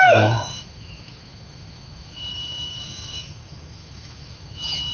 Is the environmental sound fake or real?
fake